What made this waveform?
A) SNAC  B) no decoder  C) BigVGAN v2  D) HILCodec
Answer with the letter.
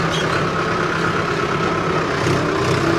B